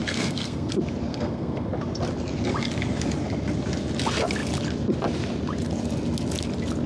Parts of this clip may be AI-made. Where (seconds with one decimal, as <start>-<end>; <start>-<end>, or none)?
0.0-0.7; 1.1-1.7